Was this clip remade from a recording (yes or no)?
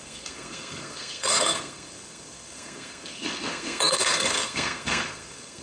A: yes